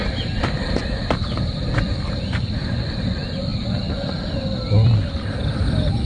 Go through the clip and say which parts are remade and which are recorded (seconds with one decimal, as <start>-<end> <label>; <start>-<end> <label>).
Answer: 0.0-0.8 remade; 0.8-1.6 recorded; 1.6-6.1 remade